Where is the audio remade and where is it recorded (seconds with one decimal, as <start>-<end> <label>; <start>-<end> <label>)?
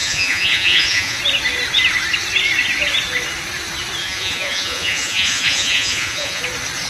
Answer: 0.0-1.2 remade; 1.2-4.0 recorded; 4.0-6.4 remade; 6.4-6.9 recorded